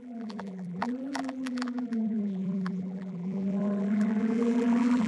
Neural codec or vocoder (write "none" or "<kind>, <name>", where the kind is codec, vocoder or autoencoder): vocoder, BigVGAN v2